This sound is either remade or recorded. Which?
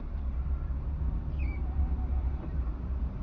remade